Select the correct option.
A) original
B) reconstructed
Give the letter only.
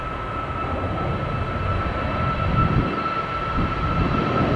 A